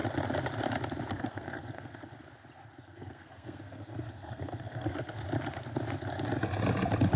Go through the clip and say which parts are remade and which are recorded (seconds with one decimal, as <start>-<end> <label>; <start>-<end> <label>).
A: 0.0-1.1 recorded; 1.1-2.0 remade; 2.0-2.8 recorded; 2.8-5.2 remade; 5.2-7.2 recorded